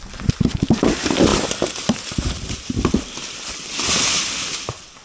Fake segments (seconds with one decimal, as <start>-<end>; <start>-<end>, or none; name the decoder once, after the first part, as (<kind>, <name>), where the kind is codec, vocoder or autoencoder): none